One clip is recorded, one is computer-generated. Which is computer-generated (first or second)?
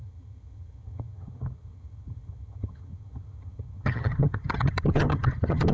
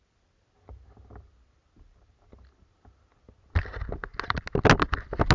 first